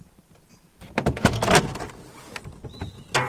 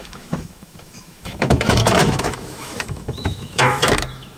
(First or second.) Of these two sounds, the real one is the first